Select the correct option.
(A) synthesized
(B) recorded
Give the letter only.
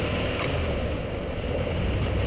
B